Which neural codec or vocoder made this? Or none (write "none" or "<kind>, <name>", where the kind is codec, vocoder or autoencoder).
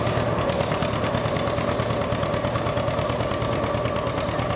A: none